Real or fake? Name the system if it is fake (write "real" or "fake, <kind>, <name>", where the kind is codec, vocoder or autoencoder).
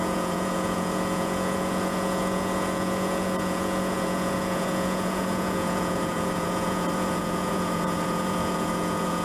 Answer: fake, vocoder, Vocos